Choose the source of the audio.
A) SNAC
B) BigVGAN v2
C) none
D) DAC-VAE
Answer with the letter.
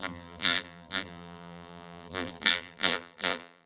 B